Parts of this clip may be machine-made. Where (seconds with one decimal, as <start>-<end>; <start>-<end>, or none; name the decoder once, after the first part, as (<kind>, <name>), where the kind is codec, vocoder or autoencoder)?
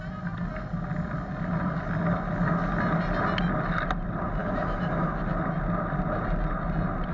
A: 4.4-5.2 (autoencoder, DAC-VAE)